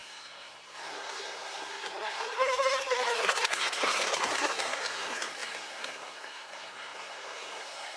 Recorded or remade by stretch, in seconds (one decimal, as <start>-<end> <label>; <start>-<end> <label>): 0.0-8.0 remade